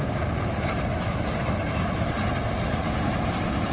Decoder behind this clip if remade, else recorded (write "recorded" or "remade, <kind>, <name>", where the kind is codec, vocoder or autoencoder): remade, vocoder, BigVGAN v2